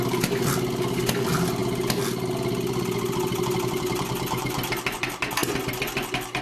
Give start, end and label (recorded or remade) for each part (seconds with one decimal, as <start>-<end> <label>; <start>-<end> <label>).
0.0-6.4 recorded